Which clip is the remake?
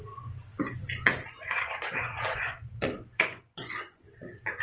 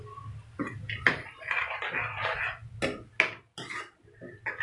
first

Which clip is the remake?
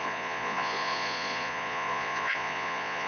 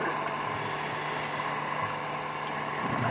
first